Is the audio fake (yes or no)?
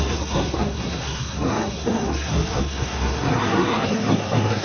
yes